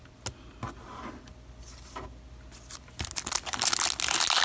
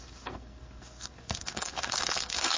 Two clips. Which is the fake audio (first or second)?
second